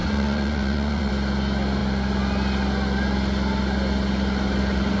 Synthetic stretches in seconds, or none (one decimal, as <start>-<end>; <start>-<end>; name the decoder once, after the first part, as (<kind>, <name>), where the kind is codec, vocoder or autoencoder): 0.0-1.1 (vocoder, Vocos)